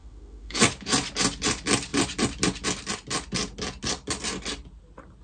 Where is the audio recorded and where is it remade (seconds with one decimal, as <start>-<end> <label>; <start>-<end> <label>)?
0.0-0.6 remade; 0.6-5.2 recorded

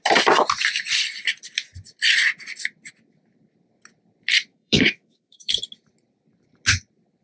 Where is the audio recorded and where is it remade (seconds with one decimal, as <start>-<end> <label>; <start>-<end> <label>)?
0.0-4.5 recorded; 4.5-5.5 remade; 5.5-7.2 recorded

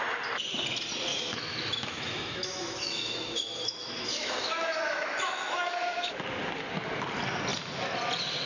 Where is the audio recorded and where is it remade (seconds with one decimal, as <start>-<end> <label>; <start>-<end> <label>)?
0.0-1.1 recorded; 1.1-6.2 remade; 6.2-8.5 recorded

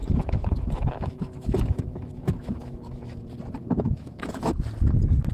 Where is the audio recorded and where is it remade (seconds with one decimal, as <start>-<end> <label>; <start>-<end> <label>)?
0.0-3.2 remade; 3.2-3.6 recorded; 3.6-4.5 remade; 4.5-5.3 recorded